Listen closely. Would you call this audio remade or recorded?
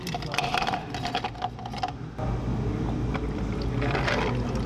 recorded